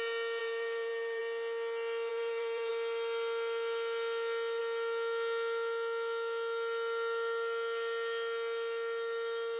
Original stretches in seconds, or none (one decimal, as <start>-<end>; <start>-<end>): 0.0-0.4; 1.2-2.1; 2.7-9.6